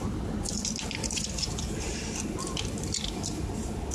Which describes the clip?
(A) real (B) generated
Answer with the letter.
A